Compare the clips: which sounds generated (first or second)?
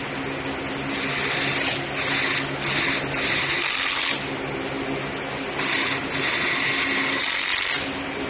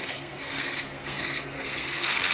second